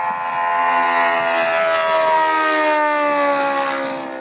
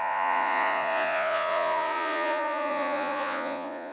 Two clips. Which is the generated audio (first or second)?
second